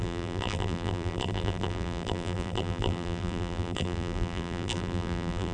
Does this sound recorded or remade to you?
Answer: remade